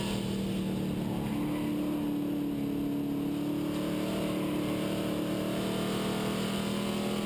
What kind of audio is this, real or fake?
real